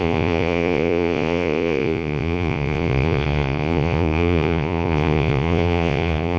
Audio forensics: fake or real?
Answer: fake